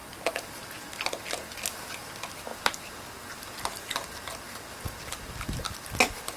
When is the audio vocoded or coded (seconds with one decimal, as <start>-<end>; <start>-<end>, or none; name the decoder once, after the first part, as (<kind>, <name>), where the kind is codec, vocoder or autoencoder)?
none